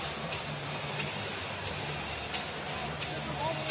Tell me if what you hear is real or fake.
real